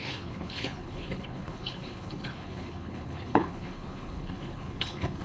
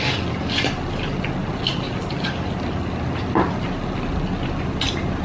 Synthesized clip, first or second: first